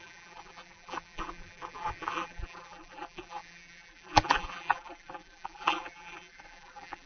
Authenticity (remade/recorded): remade